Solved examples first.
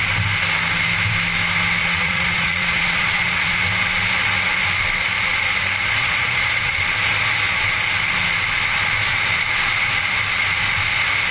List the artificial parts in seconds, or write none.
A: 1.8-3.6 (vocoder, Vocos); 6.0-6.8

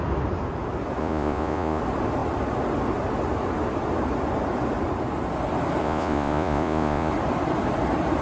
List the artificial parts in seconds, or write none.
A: 1.0-1.8 (vocoder, Vocos); 5.8-7.1